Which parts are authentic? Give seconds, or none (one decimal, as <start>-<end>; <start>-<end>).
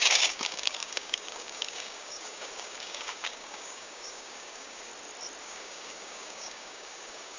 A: 4.9-5.4